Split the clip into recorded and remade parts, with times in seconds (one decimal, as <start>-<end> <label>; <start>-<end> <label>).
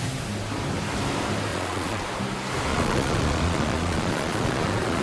0.0-1.5 recorded; 1.5-2.0 remade; 2.0-2.7 recorded; 2.7-5.0 remade